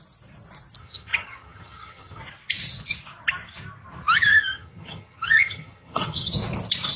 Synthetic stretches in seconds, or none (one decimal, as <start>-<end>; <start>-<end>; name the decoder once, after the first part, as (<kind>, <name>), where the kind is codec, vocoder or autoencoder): 0.8-2.2 (vocoder, HiFi-GAN); 4.3-6.3